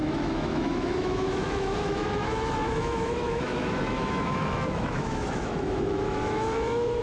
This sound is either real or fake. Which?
fake